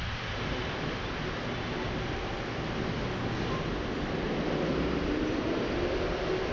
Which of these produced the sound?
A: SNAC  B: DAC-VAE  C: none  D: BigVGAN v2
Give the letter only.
C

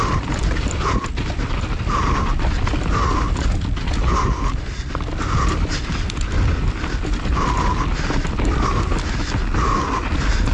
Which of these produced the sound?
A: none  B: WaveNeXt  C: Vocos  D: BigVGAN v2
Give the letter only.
A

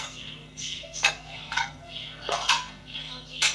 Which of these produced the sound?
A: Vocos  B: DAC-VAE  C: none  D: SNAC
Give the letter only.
D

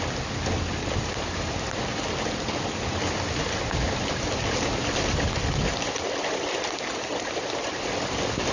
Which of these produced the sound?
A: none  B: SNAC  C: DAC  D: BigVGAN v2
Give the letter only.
A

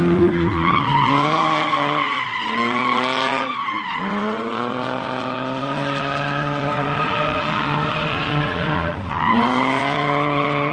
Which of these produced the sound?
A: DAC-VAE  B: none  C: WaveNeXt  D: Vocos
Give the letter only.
D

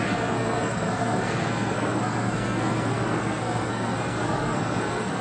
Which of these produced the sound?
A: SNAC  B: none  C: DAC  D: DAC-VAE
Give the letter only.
A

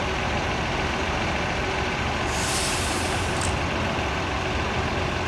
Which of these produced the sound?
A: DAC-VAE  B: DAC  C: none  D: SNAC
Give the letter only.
C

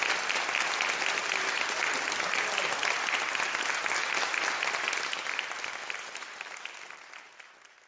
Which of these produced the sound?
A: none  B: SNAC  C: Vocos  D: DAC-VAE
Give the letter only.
A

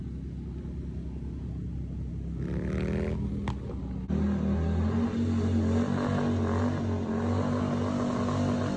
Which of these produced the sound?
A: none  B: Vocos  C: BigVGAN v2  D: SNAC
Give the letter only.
A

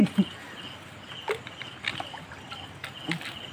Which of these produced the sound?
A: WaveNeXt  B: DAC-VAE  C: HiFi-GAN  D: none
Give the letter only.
D